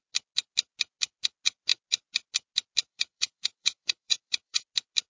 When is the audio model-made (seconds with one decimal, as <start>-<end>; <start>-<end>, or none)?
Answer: 2.8-4.6